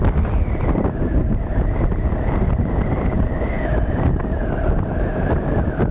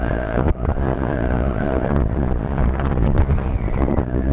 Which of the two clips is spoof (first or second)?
second